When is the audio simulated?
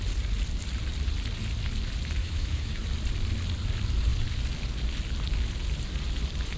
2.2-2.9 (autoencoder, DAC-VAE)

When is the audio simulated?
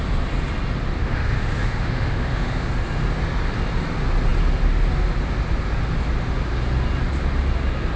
1.0-2.7 (autoencoder, DAC-VAE)